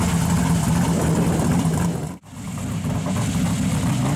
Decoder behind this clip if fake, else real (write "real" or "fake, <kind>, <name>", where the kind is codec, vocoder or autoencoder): real